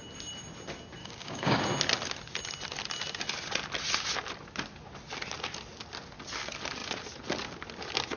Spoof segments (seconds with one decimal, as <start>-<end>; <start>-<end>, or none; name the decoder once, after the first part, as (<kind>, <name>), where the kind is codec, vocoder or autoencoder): 1.0-1.6 (codec, DAC)